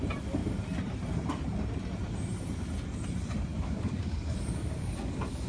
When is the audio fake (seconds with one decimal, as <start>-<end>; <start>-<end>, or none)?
3.5-5.5